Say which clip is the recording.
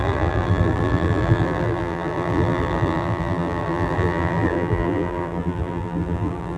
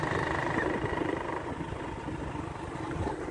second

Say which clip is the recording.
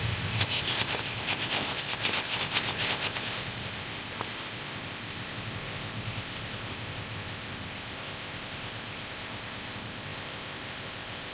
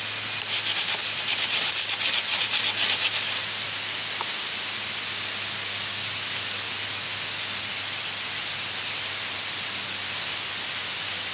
second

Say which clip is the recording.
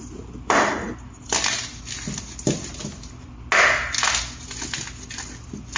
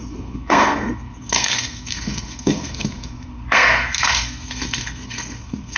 first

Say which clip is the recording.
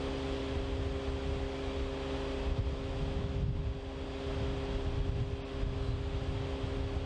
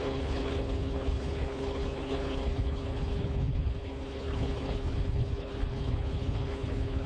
first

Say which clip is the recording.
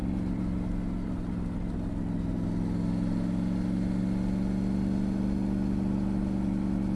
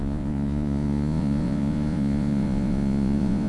first